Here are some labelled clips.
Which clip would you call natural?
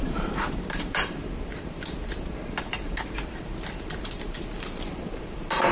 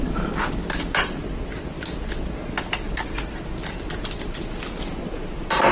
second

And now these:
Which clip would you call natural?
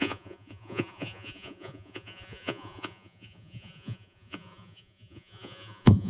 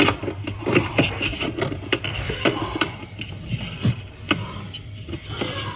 second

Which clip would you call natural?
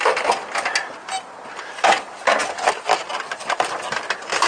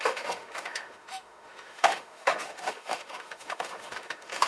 first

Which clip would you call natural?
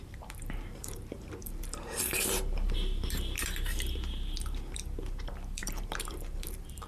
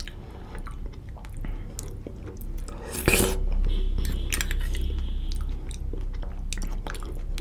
second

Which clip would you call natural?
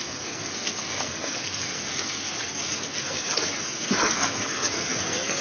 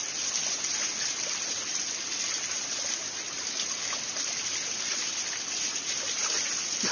second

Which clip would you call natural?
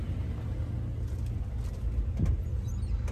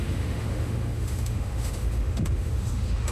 first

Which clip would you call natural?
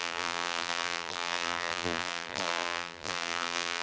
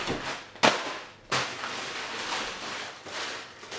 second